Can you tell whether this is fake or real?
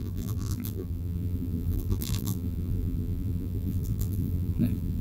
fake